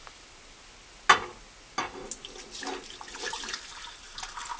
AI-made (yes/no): no